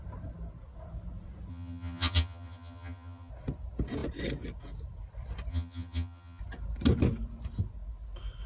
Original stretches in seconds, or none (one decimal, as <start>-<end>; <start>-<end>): 0.0-1.5; 3.3-5.5; 6.4-8.5